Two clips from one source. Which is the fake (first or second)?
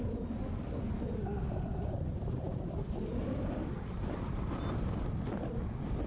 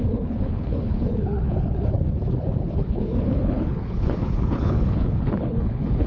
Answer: second